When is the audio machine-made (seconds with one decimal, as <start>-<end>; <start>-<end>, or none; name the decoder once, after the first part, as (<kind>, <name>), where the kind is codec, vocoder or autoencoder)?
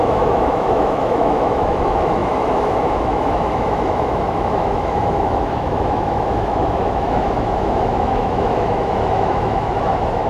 0.0-10.3 (autoencoder, DAC-VAE)